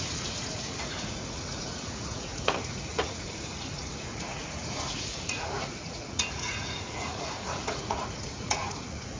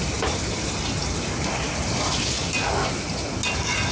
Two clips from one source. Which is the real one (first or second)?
second